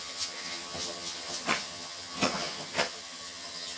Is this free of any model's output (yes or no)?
no